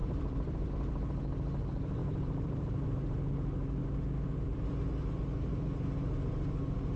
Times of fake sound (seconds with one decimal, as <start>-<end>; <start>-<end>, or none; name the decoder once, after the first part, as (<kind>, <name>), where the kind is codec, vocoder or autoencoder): 0.0-0.7 (vocoder, BigVGAN v2); 2.0-3.3; 3.8-5.0